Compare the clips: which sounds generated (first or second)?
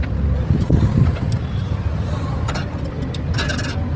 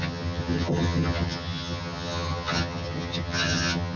second